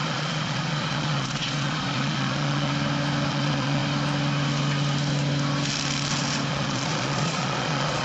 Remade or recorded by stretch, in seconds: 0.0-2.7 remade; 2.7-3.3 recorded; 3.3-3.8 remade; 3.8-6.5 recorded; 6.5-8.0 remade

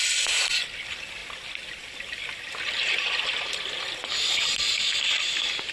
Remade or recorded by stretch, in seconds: 0.0-5.7 recorded